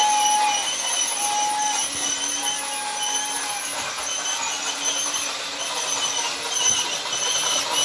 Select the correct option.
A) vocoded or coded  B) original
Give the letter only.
B